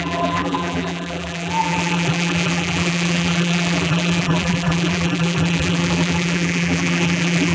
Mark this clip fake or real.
fake